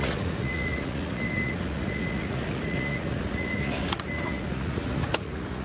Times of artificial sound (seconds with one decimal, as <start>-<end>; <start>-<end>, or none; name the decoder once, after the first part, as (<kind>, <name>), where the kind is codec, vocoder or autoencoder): 0.0-5.6 (vocoder, Vocos)